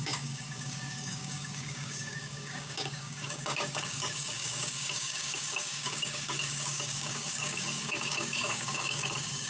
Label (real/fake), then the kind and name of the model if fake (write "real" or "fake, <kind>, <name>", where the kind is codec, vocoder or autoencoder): fake, codec, DAC